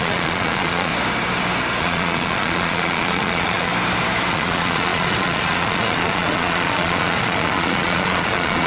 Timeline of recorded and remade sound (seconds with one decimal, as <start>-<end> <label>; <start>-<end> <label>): 0.0-0.9 remade; 0.9-1.8 recorded; 1.8-3.7 remade; 3.7-4.3 recorded; 4.3-8.7 remade